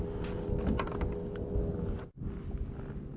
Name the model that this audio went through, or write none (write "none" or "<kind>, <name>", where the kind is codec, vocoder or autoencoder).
none